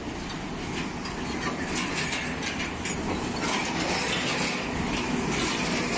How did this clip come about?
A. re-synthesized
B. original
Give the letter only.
B